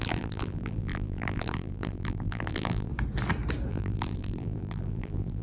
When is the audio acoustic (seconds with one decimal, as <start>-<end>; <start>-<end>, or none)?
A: 2.9-3.7